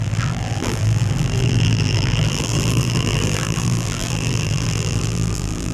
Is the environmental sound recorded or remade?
remade